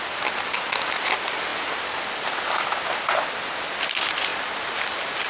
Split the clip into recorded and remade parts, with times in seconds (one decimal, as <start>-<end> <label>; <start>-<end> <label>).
0.0-5.3 recorded